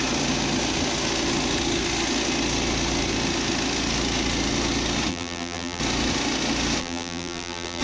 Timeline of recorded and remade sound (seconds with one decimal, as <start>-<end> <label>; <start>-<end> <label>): 0.0-5.1 recorded; 5.1-5.8 remade; 5.8-6.8 recorded; 6.8-7.8 remade